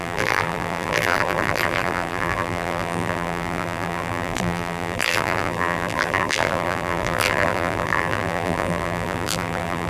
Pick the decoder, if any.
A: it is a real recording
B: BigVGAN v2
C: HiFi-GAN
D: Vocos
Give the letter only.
B